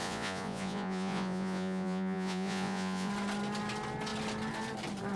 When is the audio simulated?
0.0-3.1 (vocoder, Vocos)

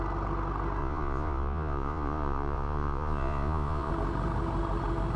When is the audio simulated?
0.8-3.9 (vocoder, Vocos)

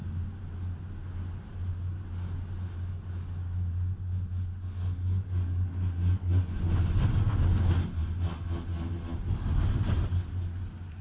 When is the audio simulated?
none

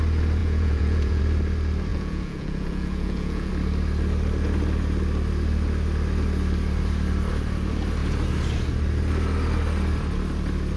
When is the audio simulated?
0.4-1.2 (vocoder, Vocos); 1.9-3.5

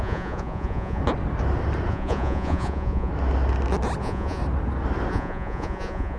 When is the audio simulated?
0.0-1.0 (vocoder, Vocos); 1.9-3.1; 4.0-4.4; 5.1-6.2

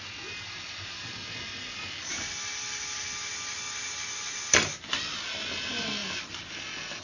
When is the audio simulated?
none

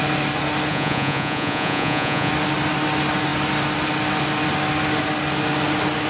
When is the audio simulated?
0.7-2.3 (vocoder, Vocos)

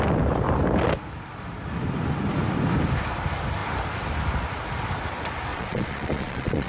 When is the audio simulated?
5.5-6.7 (vocoder, Vocos)